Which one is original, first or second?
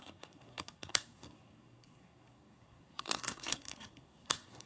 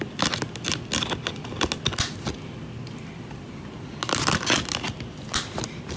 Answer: second